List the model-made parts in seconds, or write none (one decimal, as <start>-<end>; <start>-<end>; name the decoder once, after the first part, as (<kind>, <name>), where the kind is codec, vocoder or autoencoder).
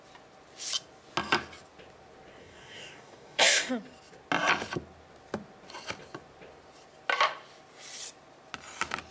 2.4-3.7 (codec, DAC)